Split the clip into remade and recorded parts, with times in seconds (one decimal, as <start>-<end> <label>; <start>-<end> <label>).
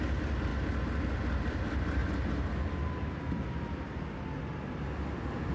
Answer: 0.0-0.5 remade; 0.5-1.0 recorded; 1.0-2.0 remade; 2.0-5.5 recorded